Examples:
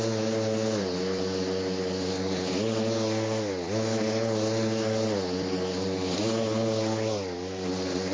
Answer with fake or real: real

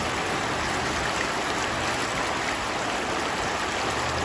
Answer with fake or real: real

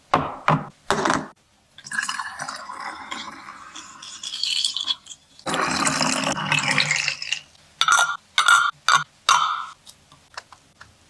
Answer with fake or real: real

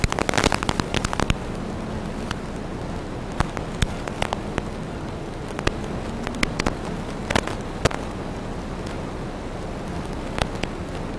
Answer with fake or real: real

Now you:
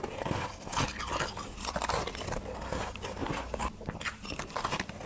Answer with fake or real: real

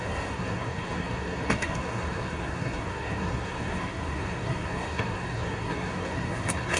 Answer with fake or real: fake